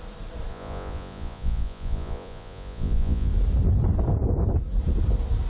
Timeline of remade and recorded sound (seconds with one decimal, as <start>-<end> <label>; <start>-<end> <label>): 0.0-0.5 recorded; 0.5-3.3 remade; 3.3-5.5 recorded